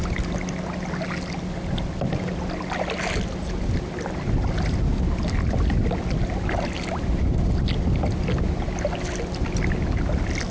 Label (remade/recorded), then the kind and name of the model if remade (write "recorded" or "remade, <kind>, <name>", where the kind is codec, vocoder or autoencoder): recorded